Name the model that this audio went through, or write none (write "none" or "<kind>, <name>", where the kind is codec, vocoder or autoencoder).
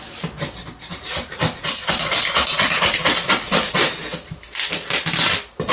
none